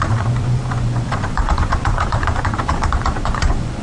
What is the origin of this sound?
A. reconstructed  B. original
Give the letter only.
A